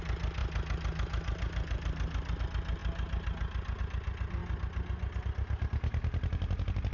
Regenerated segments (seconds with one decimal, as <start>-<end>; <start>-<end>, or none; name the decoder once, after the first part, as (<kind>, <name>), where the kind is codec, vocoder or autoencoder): none